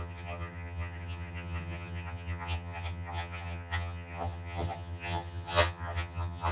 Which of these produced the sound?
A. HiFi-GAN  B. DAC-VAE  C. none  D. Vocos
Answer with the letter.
A